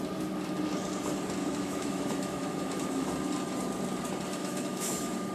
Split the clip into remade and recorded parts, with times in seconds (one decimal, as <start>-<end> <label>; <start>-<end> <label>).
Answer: 0.0-1.4 recorded; 1.4-3.1 remade; 3.1-4.4 recorded; 4.4-5.3 remade